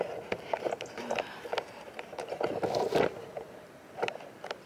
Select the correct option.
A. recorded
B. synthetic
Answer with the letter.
A